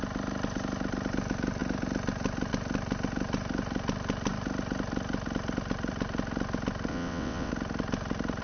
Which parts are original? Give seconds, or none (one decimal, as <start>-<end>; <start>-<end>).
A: 0.0-6.9; 7.5-8.4